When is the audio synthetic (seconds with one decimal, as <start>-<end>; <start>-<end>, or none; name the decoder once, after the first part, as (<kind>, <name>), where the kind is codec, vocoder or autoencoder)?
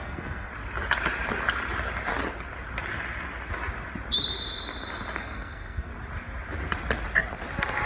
0.0-0.5 (codec, SNAC); 5.2-5.9